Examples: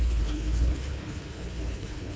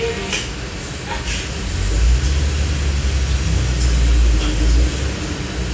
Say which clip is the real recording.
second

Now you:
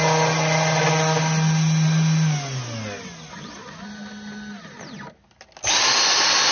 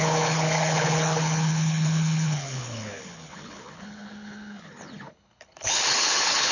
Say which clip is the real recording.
first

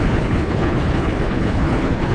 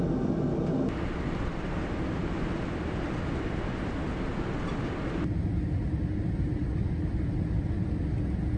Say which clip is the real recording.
second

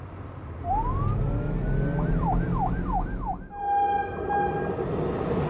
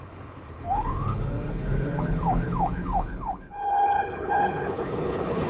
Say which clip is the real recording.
first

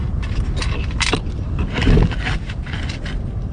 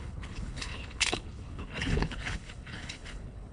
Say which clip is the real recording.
first